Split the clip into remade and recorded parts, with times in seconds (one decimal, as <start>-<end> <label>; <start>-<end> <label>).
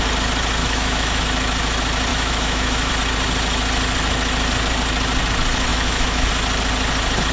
0.0-0.6 recorded; 0.6-1.2 remade; 1.2-2.1 recorded; 2.1-2.9 remade; 2.9-5.7 recorded; 5.7-6.3 remade; 6.3-7.3 recorded